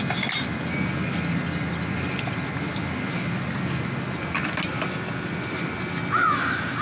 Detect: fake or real real